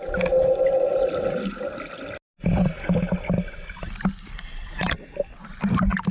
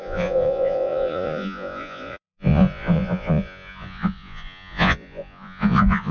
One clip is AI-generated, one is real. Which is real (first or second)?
first